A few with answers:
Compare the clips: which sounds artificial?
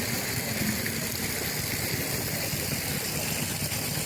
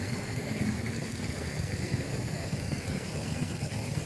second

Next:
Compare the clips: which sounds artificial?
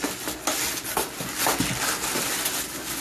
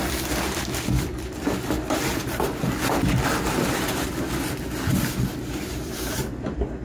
second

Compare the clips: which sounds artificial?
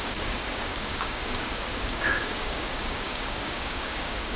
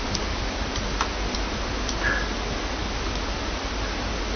first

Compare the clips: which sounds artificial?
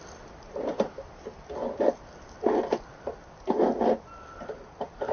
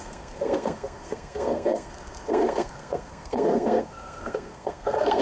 second